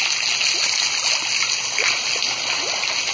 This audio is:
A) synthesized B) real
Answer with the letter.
B